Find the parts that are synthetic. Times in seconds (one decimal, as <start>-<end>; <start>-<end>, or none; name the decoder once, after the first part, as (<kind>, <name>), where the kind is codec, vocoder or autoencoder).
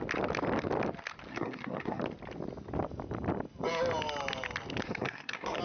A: 1.3-2.0 (codec, SNAC); 4.8-5.6